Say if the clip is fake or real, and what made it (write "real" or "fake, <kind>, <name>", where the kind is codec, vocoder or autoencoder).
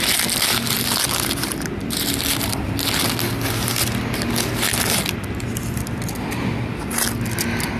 real